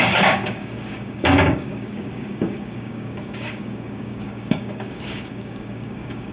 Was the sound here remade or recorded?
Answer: remade